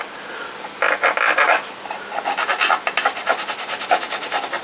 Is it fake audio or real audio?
real